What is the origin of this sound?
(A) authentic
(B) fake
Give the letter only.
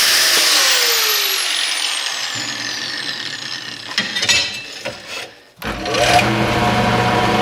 A